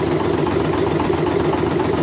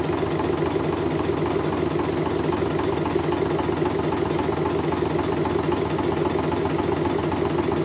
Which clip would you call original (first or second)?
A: second